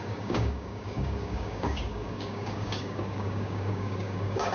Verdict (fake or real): fake